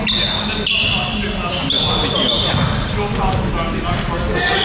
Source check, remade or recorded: recorded